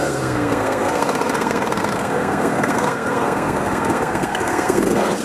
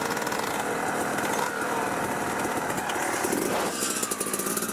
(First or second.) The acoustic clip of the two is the second